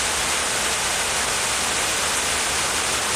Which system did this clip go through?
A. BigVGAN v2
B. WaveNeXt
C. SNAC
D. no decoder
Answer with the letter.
D